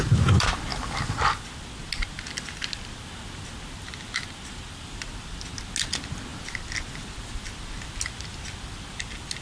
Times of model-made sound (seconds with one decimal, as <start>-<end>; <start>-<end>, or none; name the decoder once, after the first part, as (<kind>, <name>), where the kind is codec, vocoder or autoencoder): none